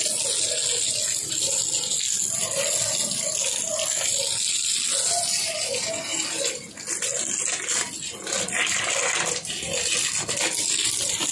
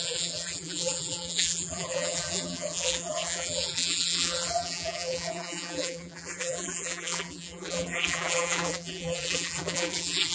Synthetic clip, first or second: second